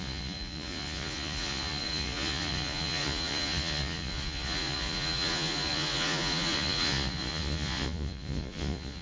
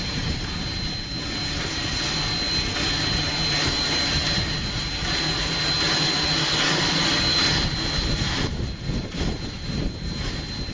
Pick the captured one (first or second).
second